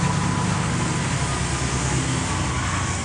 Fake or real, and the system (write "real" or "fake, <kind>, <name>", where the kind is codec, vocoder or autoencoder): real